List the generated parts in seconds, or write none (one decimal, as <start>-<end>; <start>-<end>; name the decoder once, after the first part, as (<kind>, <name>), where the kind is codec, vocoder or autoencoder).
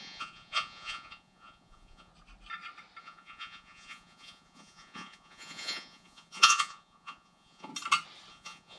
0.0-2.1 (vocoder, Vocos); 3.0-7.7; 8.3-8.8